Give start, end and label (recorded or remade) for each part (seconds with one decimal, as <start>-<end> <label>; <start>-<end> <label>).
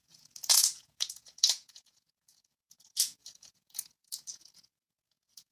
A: 0.0-5.5 remade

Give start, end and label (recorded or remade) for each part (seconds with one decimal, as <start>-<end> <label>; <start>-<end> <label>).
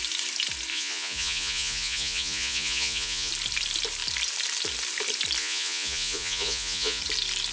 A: 0.0-0.7 recorded; 0.7-3.3 remade; 3.3-5.4 recorded; 5.4-7.0 remade; 7.0-7.5 recorded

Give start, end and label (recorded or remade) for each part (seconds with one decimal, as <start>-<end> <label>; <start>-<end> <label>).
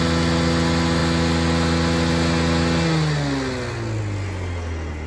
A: 0.0-5.1 recorded